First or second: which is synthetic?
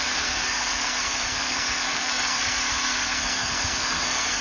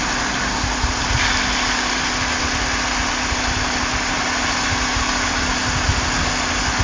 first